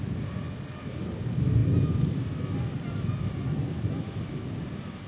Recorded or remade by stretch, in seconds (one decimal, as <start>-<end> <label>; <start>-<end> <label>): 0.0-5.1 recorded

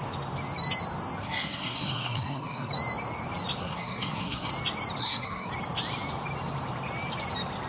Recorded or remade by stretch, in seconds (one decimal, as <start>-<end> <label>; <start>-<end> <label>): 0.0-1.2 recorded; 1.2-2.7 remade; 2.7-3.6 recorded; 3.6-4.5 remade; 4.5-5.0 recorded; 5.0-5.5 remade; 5.5-7.7 recorded

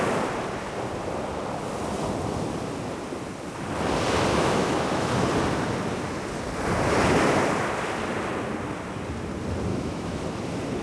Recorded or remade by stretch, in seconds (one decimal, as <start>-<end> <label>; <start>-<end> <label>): 0.0-4.3 recorded; 4.3-5.1 remade; 5.1-9.7 recorded; 9.7-10.2 remade; 10.2-10.8 recorded

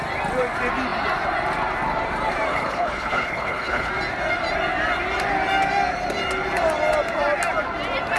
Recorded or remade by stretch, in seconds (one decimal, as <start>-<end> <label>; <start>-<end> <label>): 0.0-2.5 recorded; 2.5-3.9 remade; 3.9-8.2 recorded

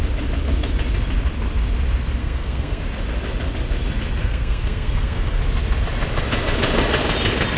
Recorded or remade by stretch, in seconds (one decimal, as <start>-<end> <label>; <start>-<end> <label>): 0.0-2.2 recorded; 2.2-2.8 remade; 2.8-4.2 recorded; 4.2-5.4 remade; 5.4-7.6 recorded

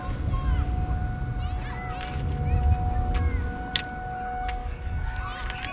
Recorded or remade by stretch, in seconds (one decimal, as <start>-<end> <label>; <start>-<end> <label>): 0.0-4.6 recorded; 4.6-5.2 remade; 5.2-5.7 recorded